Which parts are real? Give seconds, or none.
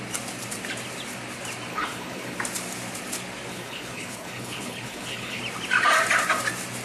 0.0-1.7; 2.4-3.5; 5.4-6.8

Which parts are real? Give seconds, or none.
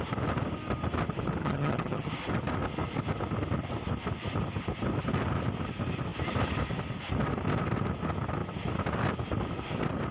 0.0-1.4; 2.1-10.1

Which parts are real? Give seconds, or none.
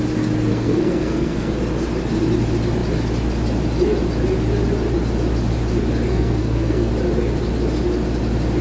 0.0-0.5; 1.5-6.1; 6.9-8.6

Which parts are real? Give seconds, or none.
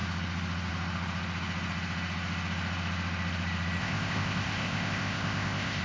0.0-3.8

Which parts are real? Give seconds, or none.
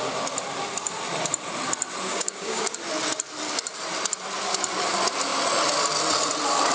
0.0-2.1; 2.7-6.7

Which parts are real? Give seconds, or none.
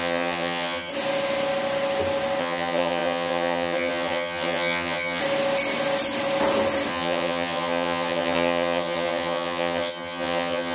0.9-2.4; 5.2-6.9